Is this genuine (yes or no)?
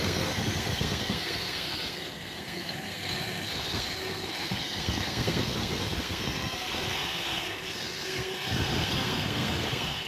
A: no